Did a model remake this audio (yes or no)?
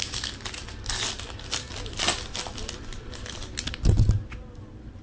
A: no